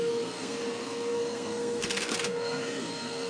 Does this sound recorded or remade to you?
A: remade